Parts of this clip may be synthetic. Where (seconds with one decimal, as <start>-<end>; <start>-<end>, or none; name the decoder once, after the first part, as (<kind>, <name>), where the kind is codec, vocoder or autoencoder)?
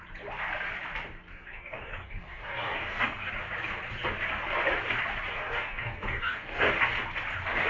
1.3-3.3 (codec, DAC); 5.3-6.7